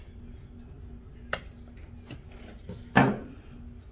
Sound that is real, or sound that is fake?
real